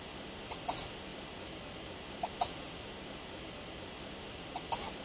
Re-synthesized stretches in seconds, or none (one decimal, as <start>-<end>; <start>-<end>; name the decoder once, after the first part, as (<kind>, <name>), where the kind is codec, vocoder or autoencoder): none